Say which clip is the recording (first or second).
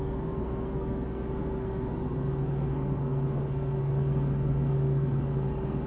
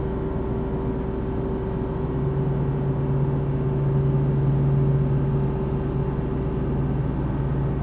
second